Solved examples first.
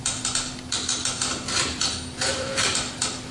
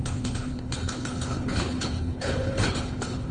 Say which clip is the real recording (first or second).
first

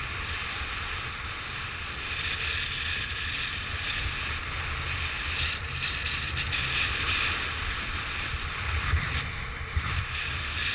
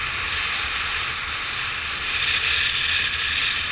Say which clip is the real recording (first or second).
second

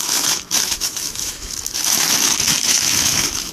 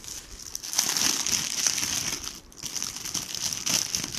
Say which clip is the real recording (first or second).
second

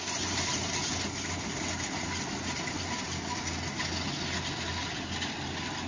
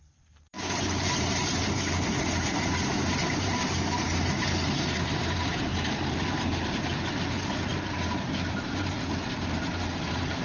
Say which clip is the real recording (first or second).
first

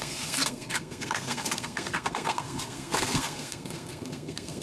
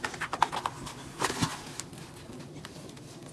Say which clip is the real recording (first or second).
second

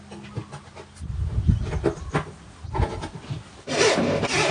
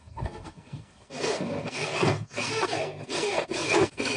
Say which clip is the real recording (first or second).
first